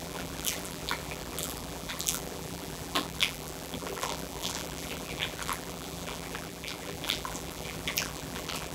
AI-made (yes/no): yes